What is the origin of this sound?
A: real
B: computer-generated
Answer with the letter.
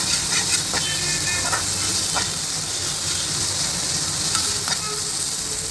A